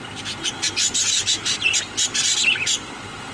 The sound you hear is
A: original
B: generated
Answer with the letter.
B